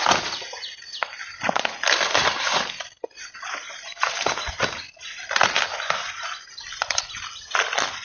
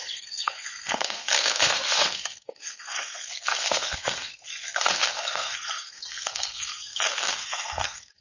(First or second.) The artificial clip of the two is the second